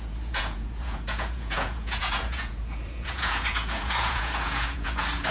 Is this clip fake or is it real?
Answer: fake